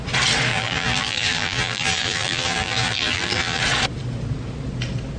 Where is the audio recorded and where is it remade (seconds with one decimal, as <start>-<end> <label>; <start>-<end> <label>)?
0.0-0.5 recorded; 0.5-3.6 remade; 3.6-5.2 recorded